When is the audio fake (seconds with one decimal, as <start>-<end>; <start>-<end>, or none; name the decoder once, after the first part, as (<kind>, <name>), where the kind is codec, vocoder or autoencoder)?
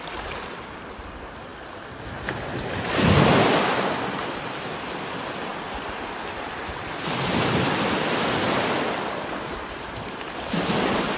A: none